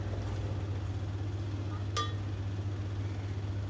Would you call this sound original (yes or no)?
yes